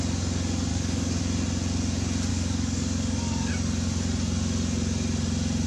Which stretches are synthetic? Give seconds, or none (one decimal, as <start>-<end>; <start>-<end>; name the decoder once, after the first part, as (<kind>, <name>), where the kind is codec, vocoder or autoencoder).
0.7-1.2 (codec, DAC); 2.3-3.5